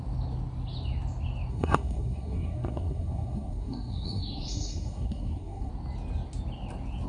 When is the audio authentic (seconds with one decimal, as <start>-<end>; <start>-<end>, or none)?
0.0-1.5; 5.7-7.1